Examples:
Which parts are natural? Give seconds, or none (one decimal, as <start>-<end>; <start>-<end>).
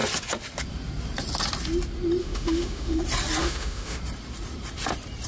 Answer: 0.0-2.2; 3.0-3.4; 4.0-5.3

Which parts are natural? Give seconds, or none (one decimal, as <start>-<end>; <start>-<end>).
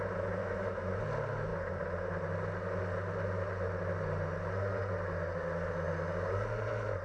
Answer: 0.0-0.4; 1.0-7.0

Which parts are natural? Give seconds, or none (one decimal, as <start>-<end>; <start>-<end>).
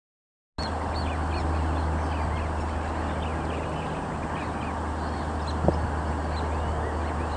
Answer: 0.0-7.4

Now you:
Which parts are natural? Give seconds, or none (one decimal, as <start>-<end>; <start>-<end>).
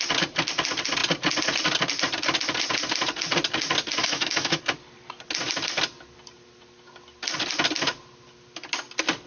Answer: 0.0-4.0; 4.6-9.3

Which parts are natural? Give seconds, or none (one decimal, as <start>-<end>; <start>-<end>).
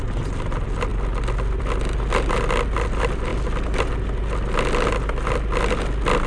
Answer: 0.0-6.3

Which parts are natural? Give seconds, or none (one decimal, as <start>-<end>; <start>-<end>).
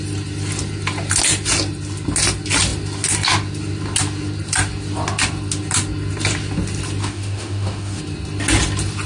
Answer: 0.0-7.0; 8.0-9.1